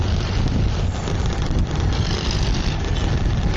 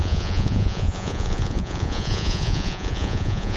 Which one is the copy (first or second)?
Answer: second